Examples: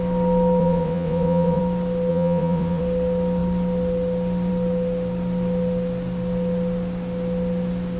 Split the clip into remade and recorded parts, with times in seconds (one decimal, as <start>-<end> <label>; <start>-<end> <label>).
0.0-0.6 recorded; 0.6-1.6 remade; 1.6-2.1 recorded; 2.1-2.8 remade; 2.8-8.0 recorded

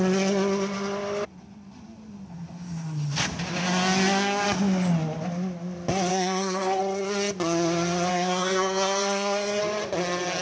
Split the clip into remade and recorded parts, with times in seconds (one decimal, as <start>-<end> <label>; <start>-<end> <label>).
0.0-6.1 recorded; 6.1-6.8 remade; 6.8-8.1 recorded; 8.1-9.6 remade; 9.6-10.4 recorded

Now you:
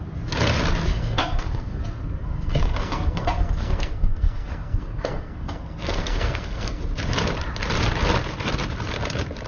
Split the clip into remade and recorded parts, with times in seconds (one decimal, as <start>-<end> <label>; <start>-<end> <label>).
0.0-0.9 recorded; 0.9-1.8 remade; 1.8-2.3 recorded; 2.3-6.8 remade; 6.8-9.5 recorded

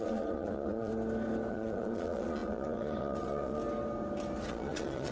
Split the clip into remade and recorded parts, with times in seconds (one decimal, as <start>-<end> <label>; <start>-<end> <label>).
0.0-0.9 remade; 0.9-1.5 recorded; 1.5-3.6 remade; 3.6-4.5 recorded; 4.5-5.1 remade

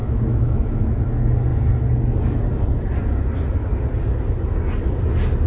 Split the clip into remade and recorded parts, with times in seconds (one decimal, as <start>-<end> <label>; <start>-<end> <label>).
0.0-1.1 remade; 1.1-5.5 recorded

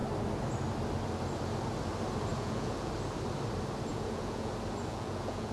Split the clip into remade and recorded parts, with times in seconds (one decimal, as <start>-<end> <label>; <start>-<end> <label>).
0.0-2.3 recorded; 2.3-2.9 remade; 2.9-3.9 recorded; 3.9-4.5 remade; 4.5-4.9 recorded; 4.9-5.5 remade

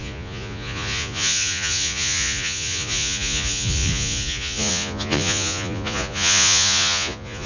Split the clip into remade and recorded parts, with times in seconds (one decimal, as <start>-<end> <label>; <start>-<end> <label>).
0.0-7.5 remade

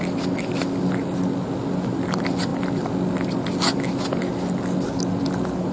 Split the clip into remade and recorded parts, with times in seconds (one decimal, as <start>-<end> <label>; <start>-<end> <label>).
0.0-5.7 recorded